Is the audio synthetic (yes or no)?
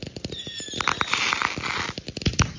no